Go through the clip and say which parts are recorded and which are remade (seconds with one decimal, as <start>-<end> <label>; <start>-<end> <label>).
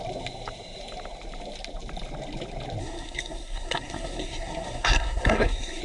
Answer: 0.0-2.8 recorded; 2.8-5.8 remade